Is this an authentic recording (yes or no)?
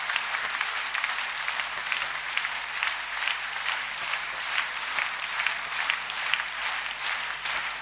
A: yes